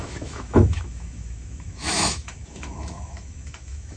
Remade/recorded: remade